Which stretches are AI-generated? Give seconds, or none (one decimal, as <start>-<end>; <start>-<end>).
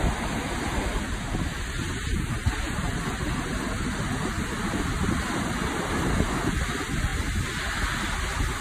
none